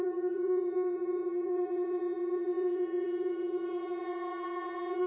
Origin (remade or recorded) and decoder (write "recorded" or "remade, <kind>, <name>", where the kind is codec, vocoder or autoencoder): remade, vocoder, Vocos